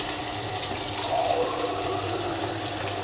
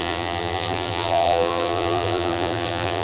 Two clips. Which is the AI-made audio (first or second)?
second